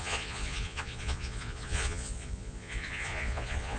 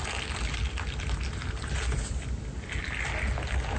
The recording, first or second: second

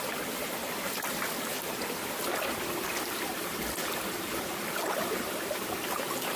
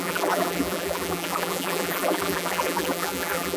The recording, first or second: first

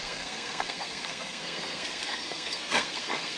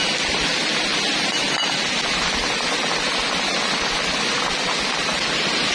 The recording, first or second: second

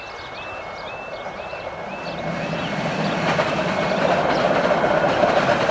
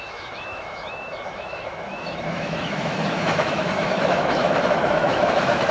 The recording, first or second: first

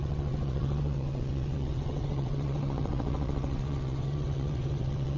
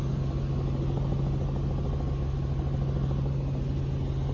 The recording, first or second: second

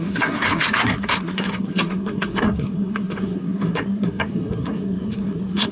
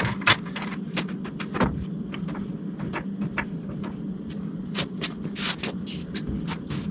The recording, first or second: second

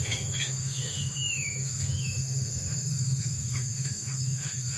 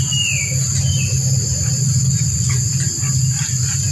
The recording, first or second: second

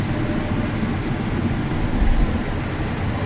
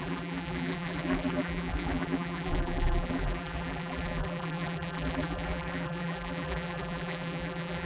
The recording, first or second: first